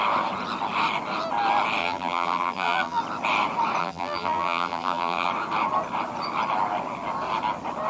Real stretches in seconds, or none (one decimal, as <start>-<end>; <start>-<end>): 0.0-1.8; 3.0-3.8; 5.3-7.9